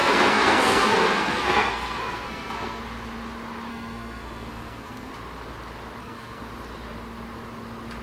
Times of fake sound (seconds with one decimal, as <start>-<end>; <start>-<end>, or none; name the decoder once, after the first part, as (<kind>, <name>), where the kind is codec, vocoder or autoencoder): 0.0-2.8 (codec, SNAC); 3.7-5.1; 6.0-6.5